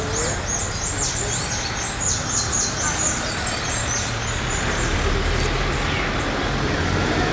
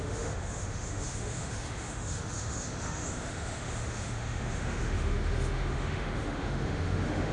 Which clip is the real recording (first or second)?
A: first